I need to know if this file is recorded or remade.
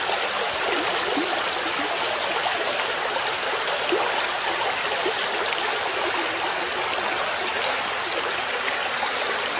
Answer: recorded